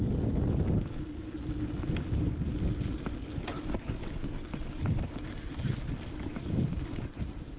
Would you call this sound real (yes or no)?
yes